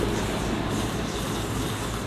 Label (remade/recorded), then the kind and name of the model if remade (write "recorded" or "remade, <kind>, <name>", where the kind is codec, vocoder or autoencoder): recorded